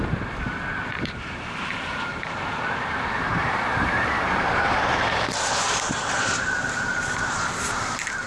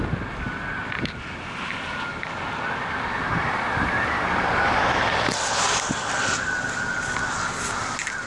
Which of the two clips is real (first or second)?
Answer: second